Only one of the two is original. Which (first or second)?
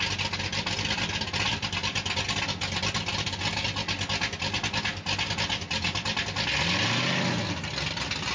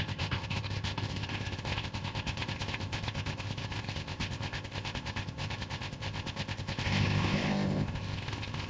first